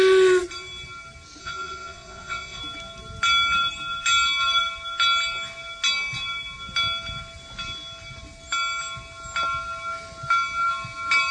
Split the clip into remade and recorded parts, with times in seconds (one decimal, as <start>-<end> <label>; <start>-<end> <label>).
0.0-1.4 recorded; 1.4-2.6 remade; 2.6-11.3 recorded